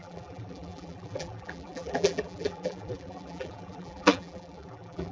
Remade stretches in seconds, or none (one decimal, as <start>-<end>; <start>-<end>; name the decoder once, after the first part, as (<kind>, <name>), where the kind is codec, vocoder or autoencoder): 0.0-5.1 (vocoder, BigVGAN v2)